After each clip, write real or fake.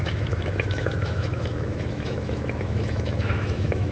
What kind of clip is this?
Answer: fake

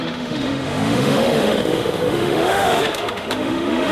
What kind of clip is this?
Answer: fake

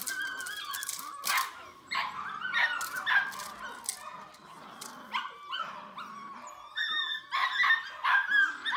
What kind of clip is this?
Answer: real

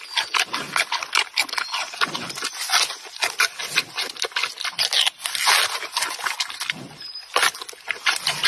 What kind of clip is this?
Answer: real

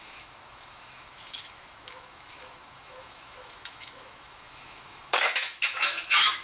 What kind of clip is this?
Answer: fake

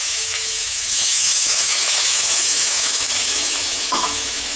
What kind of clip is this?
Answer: fake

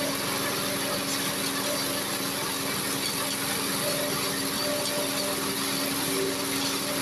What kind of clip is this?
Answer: real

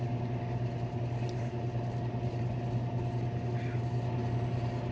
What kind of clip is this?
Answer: real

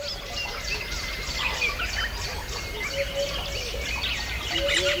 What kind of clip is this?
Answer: real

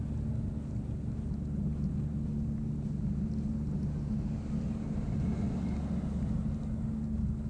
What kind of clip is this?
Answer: real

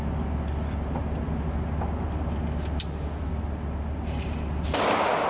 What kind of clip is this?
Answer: real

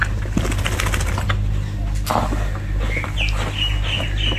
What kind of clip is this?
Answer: real